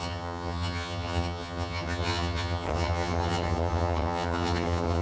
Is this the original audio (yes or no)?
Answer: no